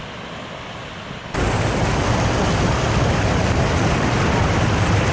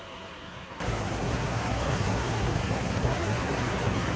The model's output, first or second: second